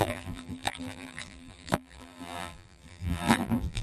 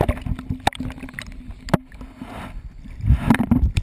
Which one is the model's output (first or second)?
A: first